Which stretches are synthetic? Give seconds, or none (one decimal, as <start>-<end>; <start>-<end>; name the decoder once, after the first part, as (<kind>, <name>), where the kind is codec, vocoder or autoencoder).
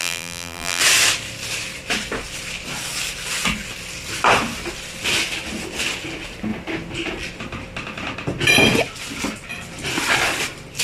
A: 0.0-0.8 (vocoder, BigVGAN v2)